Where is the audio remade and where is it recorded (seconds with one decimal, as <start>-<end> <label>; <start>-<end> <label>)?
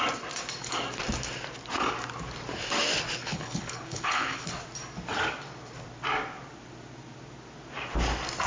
0.0-3.2 recorded; 3.2-4.5 remade; 4.5-8.5 recorded